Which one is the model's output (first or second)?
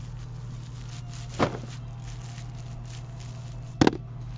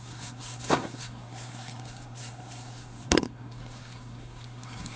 second